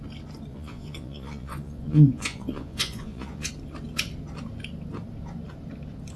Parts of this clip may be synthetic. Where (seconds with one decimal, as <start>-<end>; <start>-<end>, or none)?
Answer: 0.5-3.5

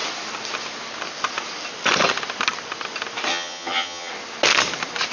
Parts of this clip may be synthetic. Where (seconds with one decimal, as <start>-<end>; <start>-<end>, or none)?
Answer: 3.3-4.1

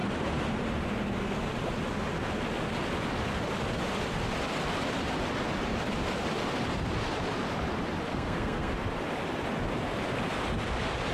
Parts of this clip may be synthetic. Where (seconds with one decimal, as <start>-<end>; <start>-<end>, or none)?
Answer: 8.1-8.7

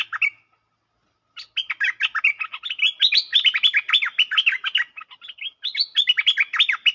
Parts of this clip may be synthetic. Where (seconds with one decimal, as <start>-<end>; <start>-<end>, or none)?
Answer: none

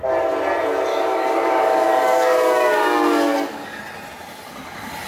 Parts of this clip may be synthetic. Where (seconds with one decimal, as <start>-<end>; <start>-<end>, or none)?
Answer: 0.9-3.8

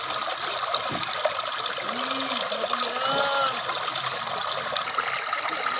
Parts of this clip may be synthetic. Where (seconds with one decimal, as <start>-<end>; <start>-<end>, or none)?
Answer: none

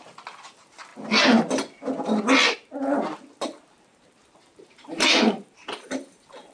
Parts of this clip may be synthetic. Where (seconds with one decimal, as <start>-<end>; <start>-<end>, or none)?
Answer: 0.0-0.9; 3.8-6.5

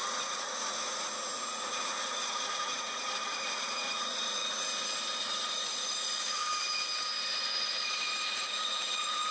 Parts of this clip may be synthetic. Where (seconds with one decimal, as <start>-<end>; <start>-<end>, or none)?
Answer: 0.0-4.4; 5.2-6.4; 7.7-9.3